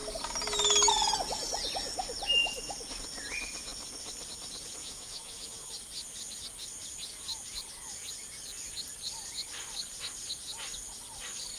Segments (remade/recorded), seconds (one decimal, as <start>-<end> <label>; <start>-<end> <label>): 0.0-4.8 recorded; 4.8-5.7 remade; 5.7-11.6 recorded

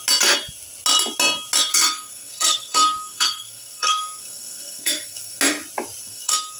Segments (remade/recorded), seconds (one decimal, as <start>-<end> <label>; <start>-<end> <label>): 0.0-1.7 recorded; 1.7-5.4 remade; 5.4-6.0 recorded; 6.0-6.6 remade

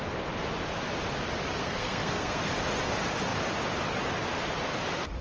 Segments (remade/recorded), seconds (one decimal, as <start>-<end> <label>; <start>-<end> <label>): 0.0-1.6 recorded; 1.6-2.5 remade; 2.5-5.2 recorded

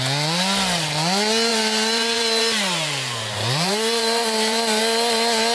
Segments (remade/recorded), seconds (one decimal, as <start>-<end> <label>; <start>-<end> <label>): 0.0-1.5 recorded; 1.5-4.8 remade; 4.8-5.5 recorded

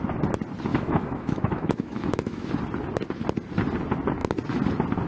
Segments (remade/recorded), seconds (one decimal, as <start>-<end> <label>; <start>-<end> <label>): 0.0-0.7 recorded; 0.7-2.5 remade; 2.5-5.1 recorded

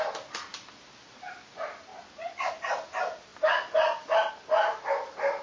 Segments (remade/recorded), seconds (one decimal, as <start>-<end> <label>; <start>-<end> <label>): 0.0-5.4 recorded